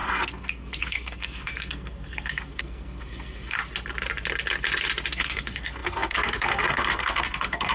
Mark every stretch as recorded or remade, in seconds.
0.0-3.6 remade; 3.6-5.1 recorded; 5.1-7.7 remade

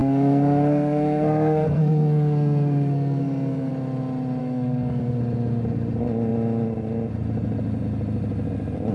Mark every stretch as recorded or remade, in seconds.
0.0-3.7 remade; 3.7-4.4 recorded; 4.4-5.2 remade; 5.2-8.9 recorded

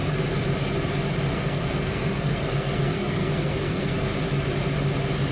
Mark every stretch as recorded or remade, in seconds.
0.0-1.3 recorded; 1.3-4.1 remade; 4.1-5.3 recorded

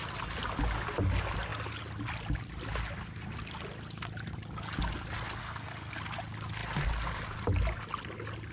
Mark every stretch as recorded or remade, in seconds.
0.0-5.4 recorded; 5.4-6.0 remade; 6.0-8.5 recorded